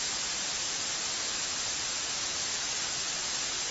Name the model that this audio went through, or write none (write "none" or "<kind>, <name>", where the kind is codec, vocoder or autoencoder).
none